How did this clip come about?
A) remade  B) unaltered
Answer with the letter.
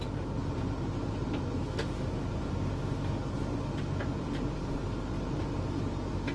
B